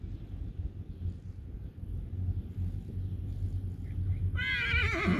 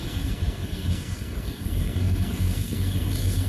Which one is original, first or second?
first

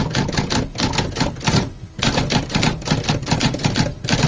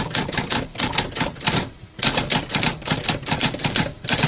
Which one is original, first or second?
first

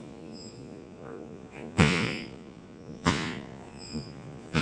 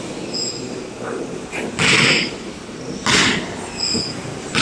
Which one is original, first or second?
second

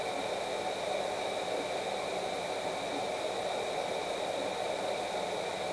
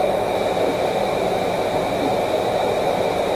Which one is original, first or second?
first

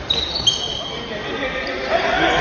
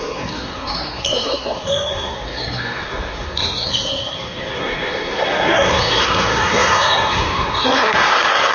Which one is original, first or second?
first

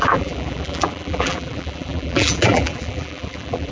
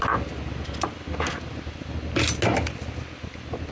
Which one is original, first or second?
second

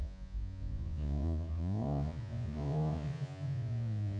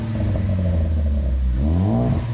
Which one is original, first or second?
second